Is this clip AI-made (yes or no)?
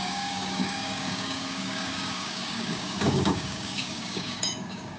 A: yes